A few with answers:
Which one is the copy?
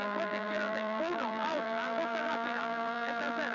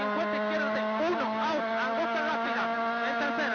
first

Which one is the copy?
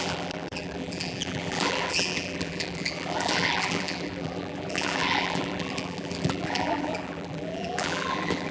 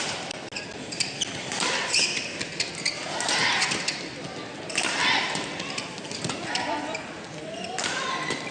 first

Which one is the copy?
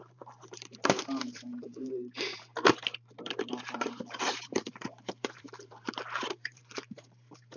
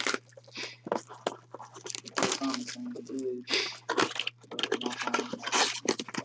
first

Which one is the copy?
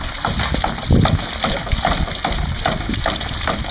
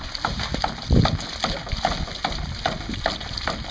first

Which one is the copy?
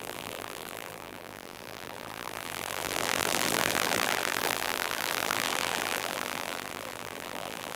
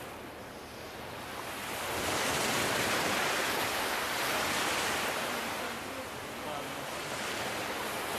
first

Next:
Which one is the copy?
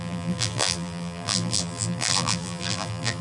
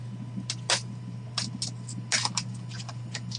first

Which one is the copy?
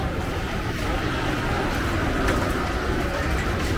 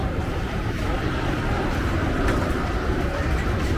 second